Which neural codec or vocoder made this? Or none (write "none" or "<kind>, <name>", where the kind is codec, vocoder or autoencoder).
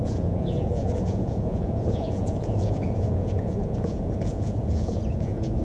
vocoder, Vocos